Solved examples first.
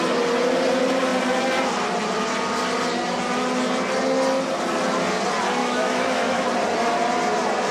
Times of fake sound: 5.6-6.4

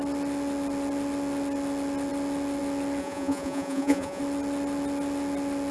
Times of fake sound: 3.0-4.2

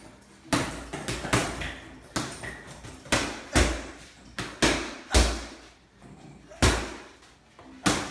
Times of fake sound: none

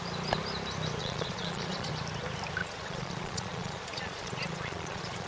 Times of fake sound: 1.0-1.9; 2.6-5.3

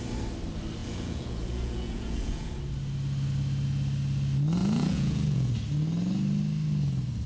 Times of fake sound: 0.8-2.6; 4.6-5.5

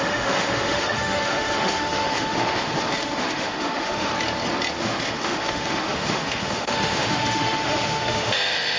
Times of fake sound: 0.0-4.1; 4.8-8.8

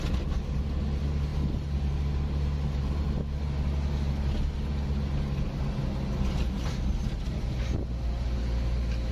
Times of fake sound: none